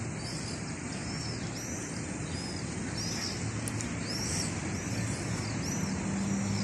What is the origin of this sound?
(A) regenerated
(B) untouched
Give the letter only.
B